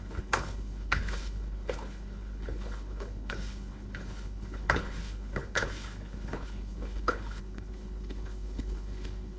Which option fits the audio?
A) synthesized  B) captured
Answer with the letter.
A